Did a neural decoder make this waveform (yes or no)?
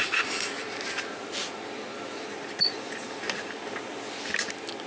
no